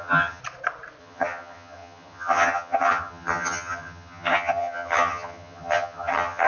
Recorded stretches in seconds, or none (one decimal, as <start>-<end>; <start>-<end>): 0.4-1.0